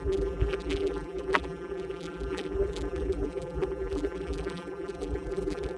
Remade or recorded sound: remade